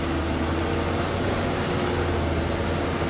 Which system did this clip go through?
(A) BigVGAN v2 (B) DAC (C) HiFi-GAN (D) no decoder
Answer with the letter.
D